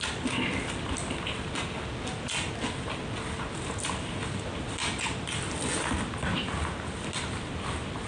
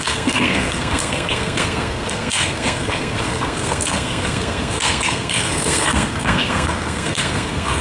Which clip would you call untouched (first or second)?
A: first